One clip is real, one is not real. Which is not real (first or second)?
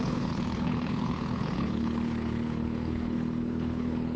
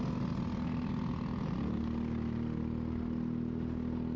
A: first